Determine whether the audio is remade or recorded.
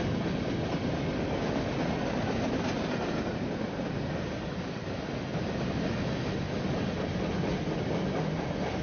recorded